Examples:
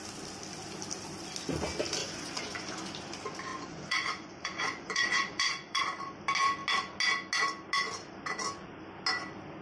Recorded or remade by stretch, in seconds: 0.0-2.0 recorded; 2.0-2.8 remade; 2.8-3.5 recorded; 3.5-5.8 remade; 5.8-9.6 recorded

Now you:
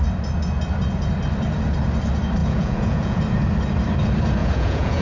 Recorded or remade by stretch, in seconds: 0.0-2.4 recorded; 2.4-3.2 remade; 3.2-4.4 recorded; 4.4-5.0 remade

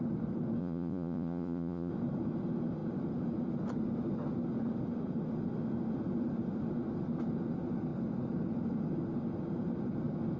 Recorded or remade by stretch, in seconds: 0.0-0.6 recorded; 0.6-1.9 remade; 1.9-10.4 recorded

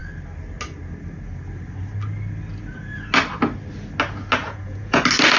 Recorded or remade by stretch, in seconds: 0.0-4.4 recorded; 4.4-5.0 remade; 5.0-5.4 recorded

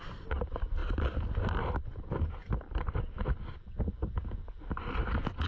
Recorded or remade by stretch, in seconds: 0.0-5.5 recorded

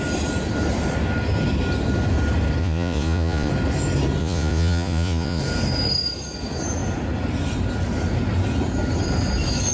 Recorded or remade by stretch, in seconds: 0.0-2.6 recorded; 2.6-3.5 remade; 3.5-4.2 recorded; 4.2-5.4 remade; 5.4-9.7 recorded

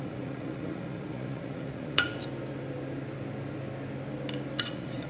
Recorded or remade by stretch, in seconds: 0.0-2.1 remade; 2.1-4.6 recorded; 4.6-5.1 remade

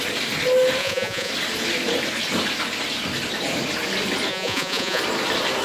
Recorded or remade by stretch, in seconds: 0.0-0.8 recorded; 0.8-1.3 remade; 1.3-4.3 recorded; 4.3-5.0 remade; 5.0-5.6 recorded